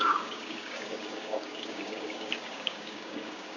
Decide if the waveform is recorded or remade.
remade